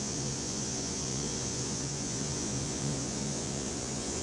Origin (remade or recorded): remade